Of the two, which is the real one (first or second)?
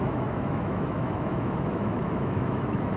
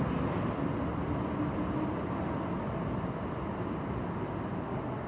second